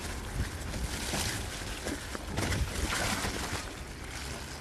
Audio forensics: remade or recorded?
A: recorded